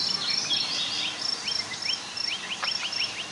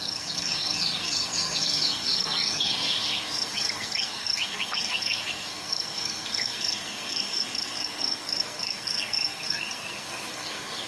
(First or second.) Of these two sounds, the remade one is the second